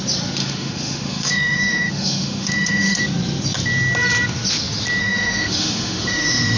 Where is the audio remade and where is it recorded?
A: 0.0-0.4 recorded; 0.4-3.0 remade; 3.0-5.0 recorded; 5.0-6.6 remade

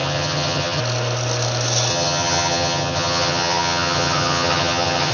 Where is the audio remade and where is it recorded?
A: 0.0-0.8 remade; 0.8-1.9 recorded; 1.9-5.1 remade